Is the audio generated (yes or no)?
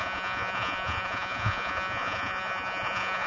yes